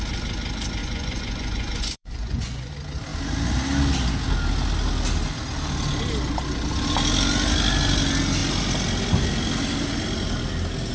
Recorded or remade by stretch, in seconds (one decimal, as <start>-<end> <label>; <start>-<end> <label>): 0.0-0.8 recorded; 0.8-2.7 remade; 2.7-10.9 recorded